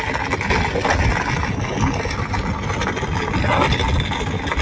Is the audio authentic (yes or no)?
yes